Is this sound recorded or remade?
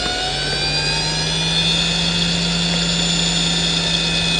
recorded